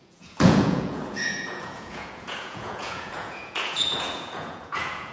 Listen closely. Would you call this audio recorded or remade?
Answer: remade